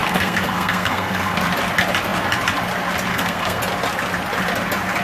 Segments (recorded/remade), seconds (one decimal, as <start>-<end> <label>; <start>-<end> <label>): 0.0-1.4 remade; 1.4-3.1 recorded; 3.1-3.6 remade; 3.6-5.0 recorded